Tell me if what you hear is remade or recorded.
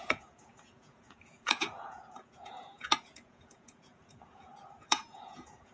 remade